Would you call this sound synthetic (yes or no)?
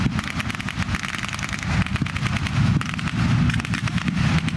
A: no